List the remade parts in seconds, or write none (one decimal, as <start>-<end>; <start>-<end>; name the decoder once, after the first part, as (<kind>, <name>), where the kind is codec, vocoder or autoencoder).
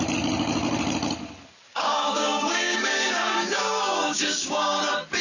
1.7-4.8 (codec, DAC)